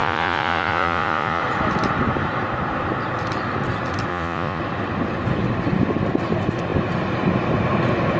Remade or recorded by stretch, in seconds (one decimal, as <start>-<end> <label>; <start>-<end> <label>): 0.0-1.4 remade; 1.4-4.1 recorded; 4.1-4.6 remade; 4.6-8.2 recorded